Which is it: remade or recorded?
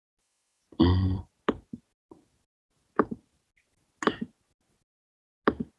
recorded